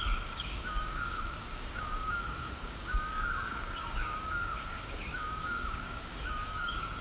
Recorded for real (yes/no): no